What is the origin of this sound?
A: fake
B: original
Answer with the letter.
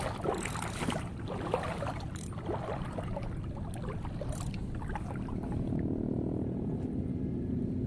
B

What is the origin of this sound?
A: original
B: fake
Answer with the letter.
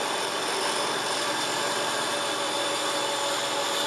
A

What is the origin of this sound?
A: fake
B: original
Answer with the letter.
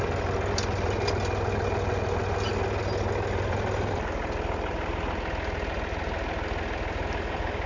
B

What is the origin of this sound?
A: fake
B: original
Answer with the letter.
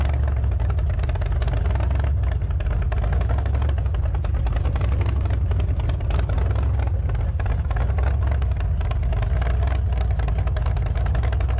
B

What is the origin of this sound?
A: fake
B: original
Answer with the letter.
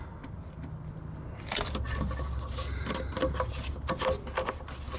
B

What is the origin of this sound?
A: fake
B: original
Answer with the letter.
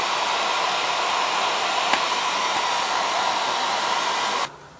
B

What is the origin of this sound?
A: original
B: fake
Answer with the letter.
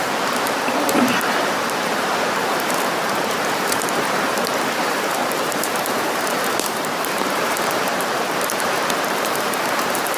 B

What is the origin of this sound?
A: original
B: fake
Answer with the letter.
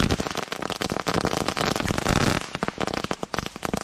B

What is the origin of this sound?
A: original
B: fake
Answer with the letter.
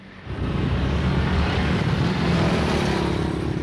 B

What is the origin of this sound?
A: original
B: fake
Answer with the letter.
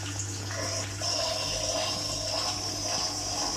A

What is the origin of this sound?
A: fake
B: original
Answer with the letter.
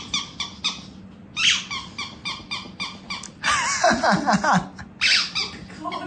B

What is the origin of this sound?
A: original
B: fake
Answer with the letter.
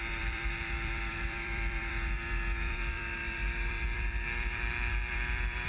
B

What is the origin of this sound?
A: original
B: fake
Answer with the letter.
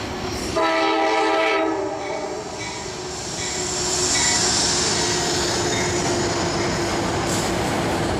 A